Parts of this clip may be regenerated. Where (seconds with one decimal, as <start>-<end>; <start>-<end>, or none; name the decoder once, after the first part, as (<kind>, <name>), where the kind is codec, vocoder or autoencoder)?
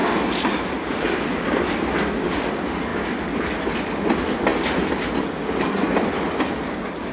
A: 0.0-2.9 (vocoder, BigVGAN v2); 3.7-4.5; 5.5-7.1